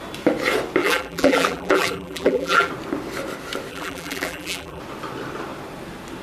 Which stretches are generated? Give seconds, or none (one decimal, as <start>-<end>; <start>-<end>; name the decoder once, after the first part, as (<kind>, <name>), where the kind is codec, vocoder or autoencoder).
0.8-2.7 (vocoder, BigVGAN v2); 3.7-4.8

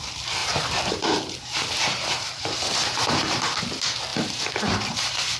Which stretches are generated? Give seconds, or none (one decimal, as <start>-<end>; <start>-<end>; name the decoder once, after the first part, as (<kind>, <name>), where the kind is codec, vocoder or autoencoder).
0.4-3.6 (vocoder, BigVGAN v2); 4.1-5.4

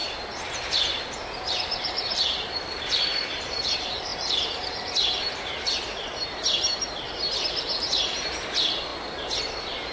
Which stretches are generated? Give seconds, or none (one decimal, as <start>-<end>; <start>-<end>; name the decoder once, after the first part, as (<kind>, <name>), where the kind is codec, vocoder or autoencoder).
0.0-9.9 (vocoder, BigVGAN v2)